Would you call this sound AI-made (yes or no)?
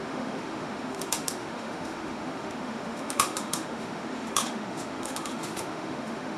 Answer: yes